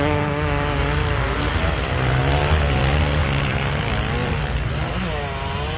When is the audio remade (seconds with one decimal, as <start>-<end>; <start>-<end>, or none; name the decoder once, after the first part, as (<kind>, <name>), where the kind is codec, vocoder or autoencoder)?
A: 2.2-2.8 (vocoder, BigVGAN v2); 3.2-3.8; 4.2-4.9